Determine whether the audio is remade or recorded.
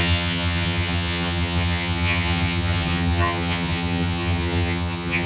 remade